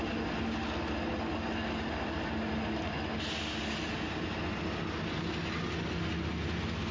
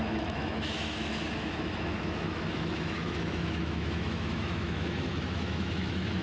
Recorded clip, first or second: first